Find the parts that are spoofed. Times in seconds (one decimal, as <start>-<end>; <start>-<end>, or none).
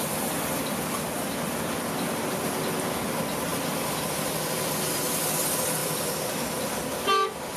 5.8-6.5